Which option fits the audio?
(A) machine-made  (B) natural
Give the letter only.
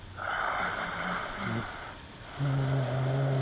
B